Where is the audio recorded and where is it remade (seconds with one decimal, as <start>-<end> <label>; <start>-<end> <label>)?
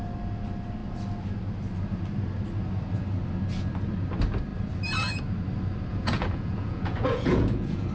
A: 0.0-5.9 recorded; 5.9-7.9 remade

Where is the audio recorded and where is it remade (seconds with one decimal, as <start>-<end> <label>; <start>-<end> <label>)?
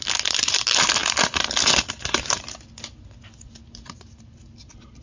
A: 0.0-5.0 recorded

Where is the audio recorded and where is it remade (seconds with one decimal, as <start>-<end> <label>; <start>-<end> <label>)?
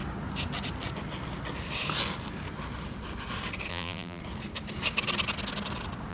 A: 0.0-3.7 recorded; 3.7-4.2 remade; 4.2-6.1 recorded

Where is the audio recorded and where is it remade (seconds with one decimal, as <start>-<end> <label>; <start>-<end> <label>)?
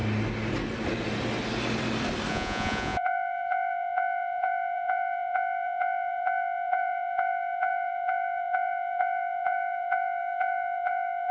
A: 0.0-2.3 recorded; 2.3-11.3 remade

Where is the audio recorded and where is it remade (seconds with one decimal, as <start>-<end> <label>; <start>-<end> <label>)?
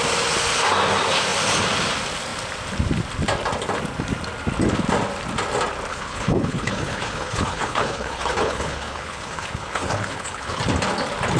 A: 0.0-5.9 recorded; 5.9-10.6 remade; 10.6-11.4 recorded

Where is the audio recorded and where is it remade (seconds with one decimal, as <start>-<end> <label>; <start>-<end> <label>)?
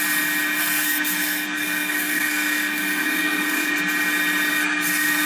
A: 0.0-0.6 recorded; 0.6-3.8 remade; 3.8-4.5 recorded; 4.5-5.3 remade